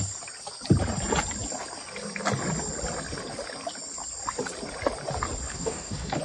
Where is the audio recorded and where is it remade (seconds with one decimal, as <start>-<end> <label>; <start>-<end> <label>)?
0.0-5.5 recorded; 5.5-6.2 remade